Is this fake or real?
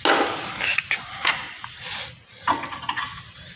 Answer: real